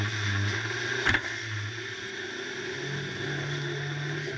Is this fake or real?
real